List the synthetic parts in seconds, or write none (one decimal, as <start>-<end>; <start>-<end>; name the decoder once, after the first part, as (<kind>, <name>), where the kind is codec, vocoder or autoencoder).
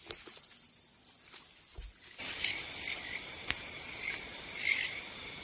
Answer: none